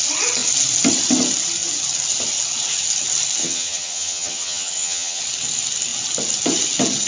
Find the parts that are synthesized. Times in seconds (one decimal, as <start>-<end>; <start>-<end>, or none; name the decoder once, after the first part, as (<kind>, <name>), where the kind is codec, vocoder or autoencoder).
3.4-5.2 (vocoder, HiFi-GAN)